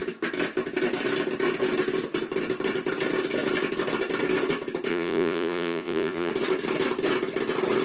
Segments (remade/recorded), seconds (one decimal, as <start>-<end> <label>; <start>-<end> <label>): 0.0-4.9 recorded; 4.9-6.3 remade; 6.3-7.8 recorded